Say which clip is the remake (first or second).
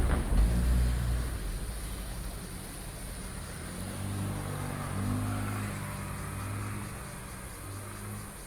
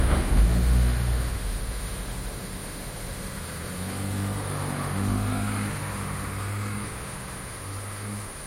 second